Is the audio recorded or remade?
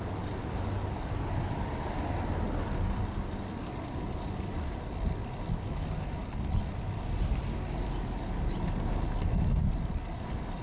recorded